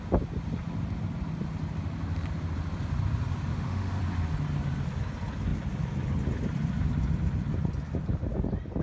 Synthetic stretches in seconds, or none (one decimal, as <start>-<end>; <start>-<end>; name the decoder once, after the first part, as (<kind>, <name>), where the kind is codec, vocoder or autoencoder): 3.5-4.0 (autoencoder, DAC-VAE)